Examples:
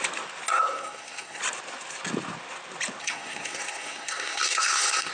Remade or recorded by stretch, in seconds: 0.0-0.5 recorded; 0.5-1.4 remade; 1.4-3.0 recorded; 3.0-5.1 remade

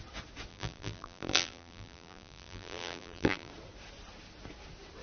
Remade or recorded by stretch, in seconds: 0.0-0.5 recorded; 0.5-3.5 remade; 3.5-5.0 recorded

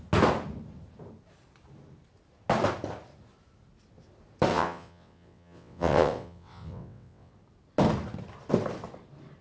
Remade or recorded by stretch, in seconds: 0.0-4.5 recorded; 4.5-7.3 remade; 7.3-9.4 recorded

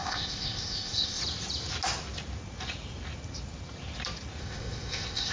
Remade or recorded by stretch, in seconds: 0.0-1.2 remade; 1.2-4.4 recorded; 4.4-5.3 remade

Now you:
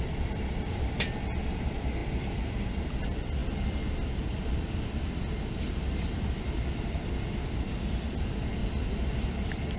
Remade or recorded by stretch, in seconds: 0.0-8.6 remade; 8.6-9.2 recorded; 9.2-9.8 remade